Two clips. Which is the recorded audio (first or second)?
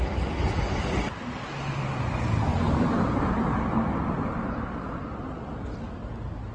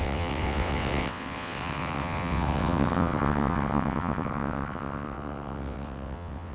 first